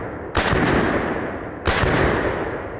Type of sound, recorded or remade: recorded